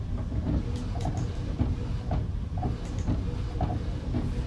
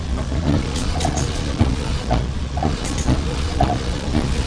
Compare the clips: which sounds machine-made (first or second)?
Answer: second